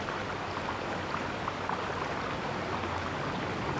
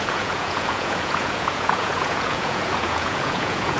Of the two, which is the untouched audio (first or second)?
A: first